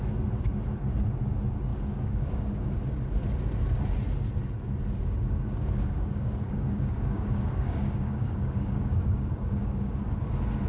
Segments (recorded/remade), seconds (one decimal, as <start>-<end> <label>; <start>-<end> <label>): 0.0-1.7 recorded; 1.7-2.7 remade; 2.7-5.0 recorded; 5.0-10.0 remade; 10.0-10.7 recorded